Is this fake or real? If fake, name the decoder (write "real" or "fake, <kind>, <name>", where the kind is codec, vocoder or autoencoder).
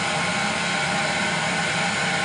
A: real